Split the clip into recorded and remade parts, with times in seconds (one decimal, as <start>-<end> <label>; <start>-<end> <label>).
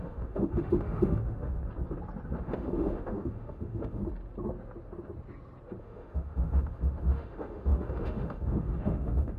0.0-1.6 remade; 1.6-2.4 recorded; 2.4-4.0 remade; 4.0-5.8 recorded; 5.8-9.4 remade